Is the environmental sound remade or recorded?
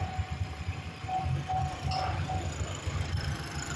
remade